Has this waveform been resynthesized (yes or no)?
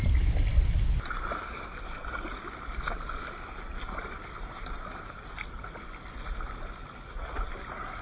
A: no